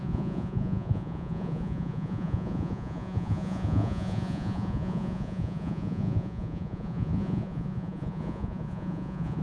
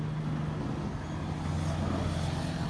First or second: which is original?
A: second